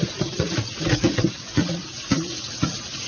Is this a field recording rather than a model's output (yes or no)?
no